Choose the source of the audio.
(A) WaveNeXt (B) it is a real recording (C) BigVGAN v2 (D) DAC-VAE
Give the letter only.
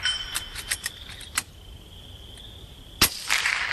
C